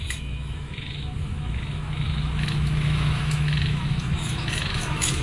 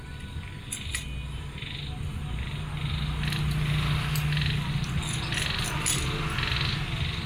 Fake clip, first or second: first